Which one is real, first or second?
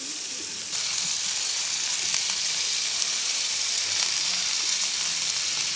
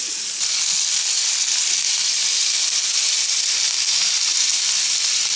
second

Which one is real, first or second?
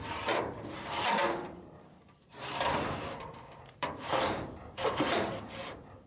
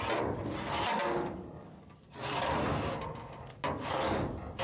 second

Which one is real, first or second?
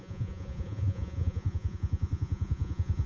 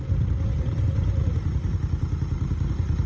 second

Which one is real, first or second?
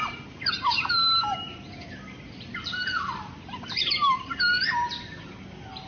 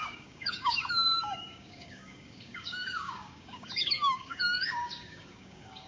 first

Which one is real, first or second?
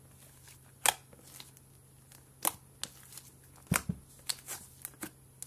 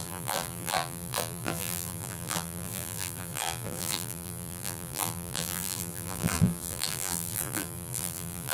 first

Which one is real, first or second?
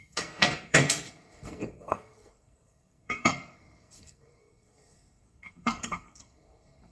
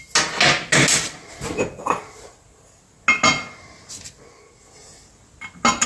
second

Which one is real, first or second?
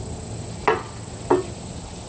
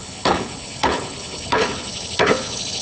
first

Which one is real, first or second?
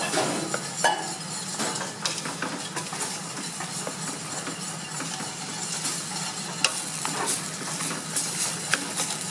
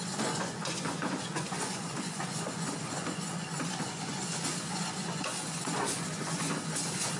first